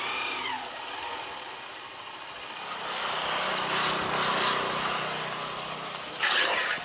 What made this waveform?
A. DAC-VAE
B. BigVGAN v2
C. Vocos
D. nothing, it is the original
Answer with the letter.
D